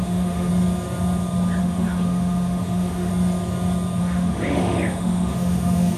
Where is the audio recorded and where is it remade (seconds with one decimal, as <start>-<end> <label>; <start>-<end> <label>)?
0.0-0.5 remade; 0.5-1.6 recorded; 1.6-3.1 remade; 3.1-4.0 recorded; 4.0-6.0 remade